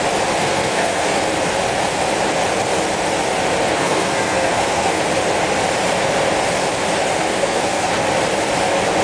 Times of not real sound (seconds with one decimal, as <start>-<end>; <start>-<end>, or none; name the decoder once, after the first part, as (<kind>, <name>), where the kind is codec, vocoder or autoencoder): 0.4-1.2 (codec, SNAC); 3.7-5.0; 7.3-7.9